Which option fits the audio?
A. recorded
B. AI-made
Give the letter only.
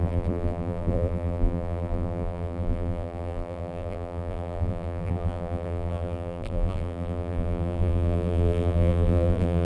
B